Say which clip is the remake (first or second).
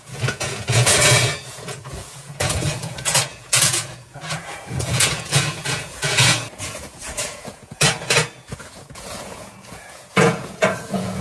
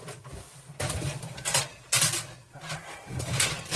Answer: first